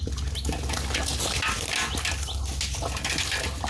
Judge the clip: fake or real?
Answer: real